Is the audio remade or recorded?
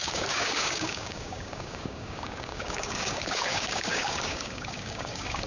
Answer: remade